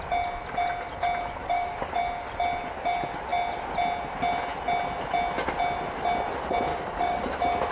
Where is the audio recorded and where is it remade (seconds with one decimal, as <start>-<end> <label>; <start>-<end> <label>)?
0.0-1.4 recorded; 1.4-2.0 remade; 2.0-6.7 recorded; 6.7-7.2 remade; 7.2-7.7 recorded